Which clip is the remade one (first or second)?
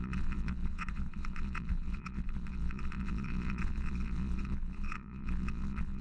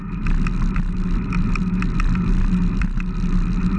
first